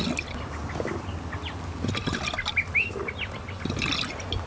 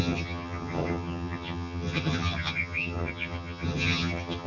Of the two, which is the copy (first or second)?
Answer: second